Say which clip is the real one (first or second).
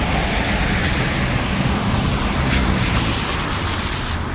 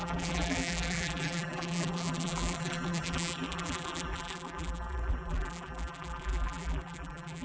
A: first